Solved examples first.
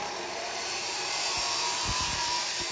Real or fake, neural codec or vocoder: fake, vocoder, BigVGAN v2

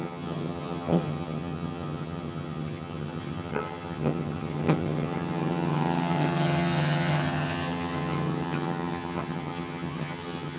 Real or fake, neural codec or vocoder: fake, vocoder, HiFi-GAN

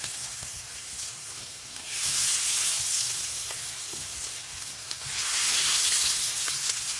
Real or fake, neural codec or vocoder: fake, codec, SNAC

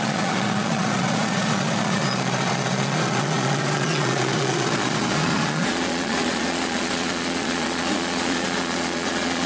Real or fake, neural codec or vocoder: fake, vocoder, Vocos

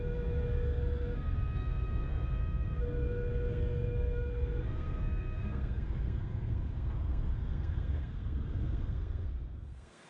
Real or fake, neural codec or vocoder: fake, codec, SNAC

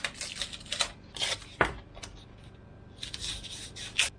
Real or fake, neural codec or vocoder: real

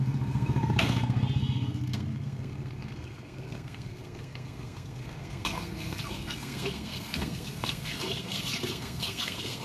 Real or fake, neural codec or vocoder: fake, codec, SNAC